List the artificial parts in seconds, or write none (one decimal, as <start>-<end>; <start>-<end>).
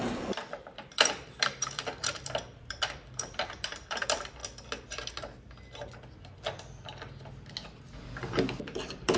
0.0-4.4; 7.8-9.2